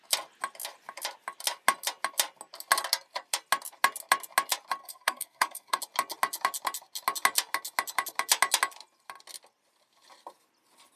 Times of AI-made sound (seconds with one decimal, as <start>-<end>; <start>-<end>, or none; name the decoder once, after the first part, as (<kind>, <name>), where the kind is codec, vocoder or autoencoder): 4.8-5.8 (codec, SNAC)